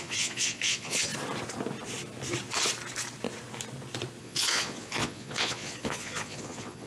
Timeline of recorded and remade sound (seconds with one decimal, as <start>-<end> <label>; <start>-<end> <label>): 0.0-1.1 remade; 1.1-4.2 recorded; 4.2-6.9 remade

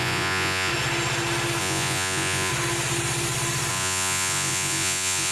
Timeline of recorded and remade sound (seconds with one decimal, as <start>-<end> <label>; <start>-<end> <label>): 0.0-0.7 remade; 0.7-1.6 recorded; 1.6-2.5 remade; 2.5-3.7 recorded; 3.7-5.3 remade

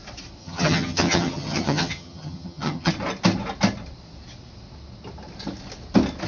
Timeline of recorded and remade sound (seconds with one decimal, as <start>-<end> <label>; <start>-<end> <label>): 0.0-0.4 recorded; 0.4-2.9 remade; 2.9-6.3 recorded

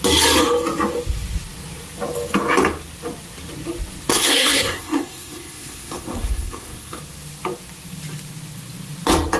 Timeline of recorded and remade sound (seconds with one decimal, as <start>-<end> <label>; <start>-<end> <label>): 0.0-4.1 recorded; 4.1-7.0 remade; 7.0-9.4 recorded

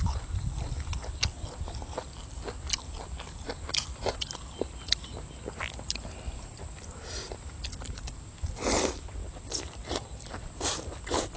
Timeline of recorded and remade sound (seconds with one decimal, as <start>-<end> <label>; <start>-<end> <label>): 0.0-11.4 recorded

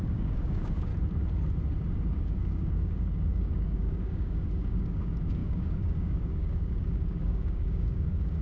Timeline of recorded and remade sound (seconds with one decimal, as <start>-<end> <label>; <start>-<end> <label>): 0.0-0.9 remade; 0.9-2.2 recorded; 2.2-8.4 remade

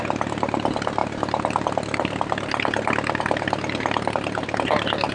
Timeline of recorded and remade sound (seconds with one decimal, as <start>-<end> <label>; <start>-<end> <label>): 0.0-5.1 recorded

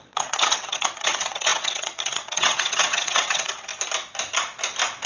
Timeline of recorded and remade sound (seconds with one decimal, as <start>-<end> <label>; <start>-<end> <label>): 0.0-3.7 remade; 3.7-5.1 recorded